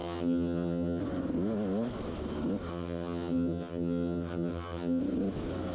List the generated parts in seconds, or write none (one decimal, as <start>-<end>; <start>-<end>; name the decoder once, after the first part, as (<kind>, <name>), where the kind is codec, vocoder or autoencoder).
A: 0.0-1.0 (vocoder, HiFi-GAN); 2.7-5.0